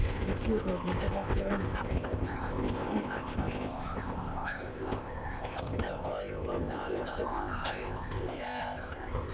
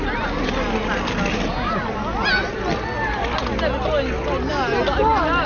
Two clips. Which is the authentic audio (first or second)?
second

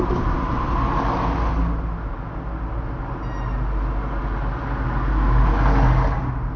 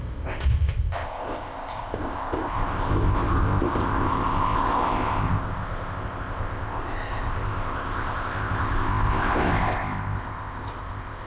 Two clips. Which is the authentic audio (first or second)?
first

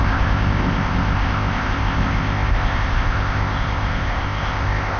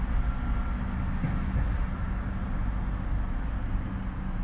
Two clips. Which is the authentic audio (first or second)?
second